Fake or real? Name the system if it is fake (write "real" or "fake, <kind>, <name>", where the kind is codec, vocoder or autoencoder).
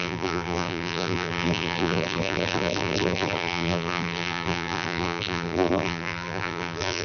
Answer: fake, vocoder, BigVGAN v2